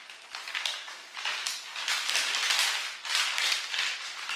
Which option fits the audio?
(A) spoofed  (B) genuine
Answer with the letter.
B